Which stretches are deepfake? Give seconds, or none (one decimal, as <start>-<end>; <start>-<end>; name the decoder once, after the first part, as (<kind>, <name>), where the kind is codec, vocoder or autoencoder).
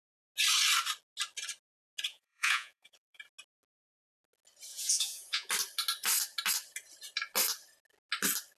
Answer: 2.1-3.2 (vocoder, Vocos); 4.7-5.5